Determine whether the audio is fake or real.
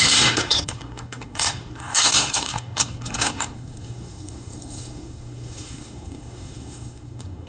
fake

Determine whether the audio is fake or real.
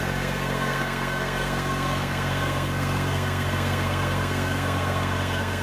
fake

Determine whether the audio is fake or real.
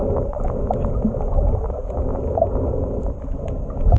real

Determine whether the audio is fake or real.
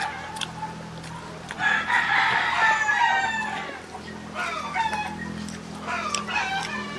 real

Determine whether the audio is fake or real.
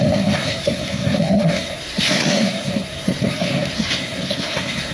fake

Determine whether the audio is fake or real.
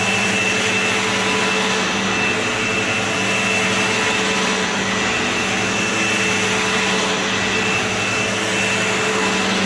real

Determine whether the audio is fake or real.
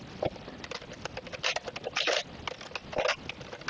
real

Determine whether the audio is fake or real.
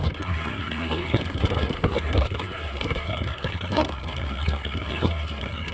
fake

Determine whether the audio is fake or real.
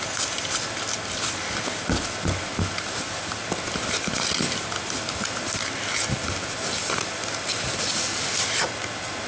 real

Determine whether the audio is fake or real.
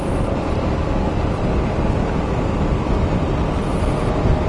real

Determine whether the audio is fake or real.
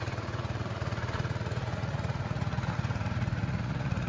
fake